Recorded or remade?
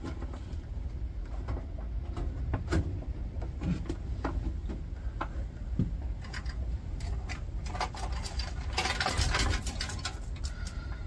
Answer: recorded